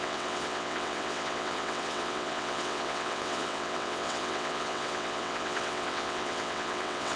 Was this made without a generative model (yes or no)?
no